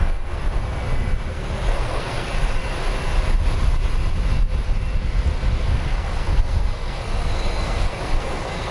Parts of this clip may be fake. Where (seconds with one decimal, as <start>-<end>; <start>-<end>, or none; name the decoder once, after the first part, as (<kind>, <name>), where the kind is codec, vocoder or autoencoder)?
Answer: 0.0-0.4 (codec, SNAC); 1.3-2.6; 5.6-8.7

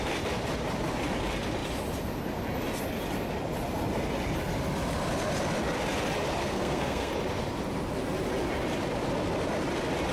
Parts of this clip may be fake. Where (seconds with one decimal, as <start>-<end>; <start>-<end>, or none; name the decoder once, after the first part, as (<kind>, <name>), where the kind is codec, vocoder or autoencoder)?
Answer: 6.4-7.1 (codec, SNAC)

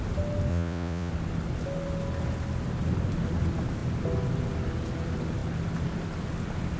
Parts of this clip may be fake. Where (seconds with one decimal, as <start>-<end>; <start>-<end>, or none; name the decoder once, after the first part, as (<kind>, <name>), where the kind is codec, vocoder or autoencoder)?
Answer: 0.5-1.1 (vocoder, Vocos)

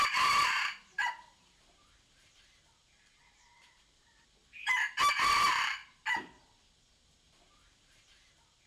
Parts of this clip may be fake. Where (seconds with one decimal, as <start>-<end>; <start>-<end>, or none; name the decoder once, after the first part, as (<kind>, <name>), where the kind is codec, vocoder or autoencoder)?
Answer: 0.0-4.4 (vocoder, BigVGAN v2); 5.0-5.8; 7.2-8.7

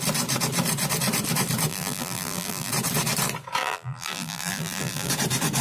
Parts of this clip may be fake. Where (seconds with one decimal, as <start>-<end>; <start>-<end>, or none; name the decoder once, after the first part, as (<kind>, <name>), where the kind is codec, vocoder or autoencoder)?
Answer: 1.7-2.7 (vocoder, BigVGAN v2); 3.6-5.1